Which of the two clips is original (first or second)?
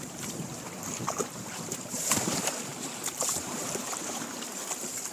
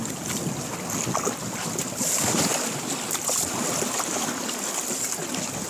second